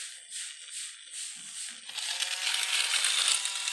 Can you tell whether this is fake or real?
real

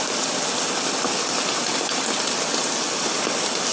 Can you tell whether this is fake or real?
real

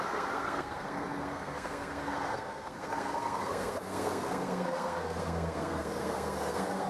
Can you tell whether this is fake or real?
fake